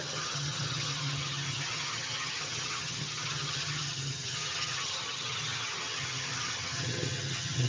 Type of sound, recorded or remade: remade